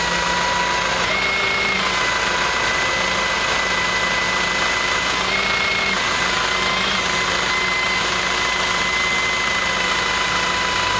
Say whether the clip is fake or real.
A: real